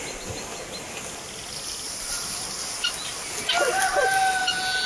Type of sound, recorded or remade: recorded